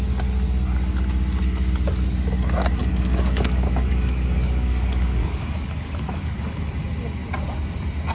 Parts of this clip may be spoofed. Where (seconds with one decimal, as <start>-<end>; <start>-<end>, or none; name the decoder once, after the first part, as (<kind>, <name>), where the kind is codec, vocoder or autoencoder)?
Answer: 2.8-6.4 (codec, DAC)